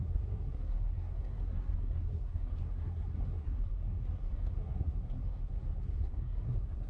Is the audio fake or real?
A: fake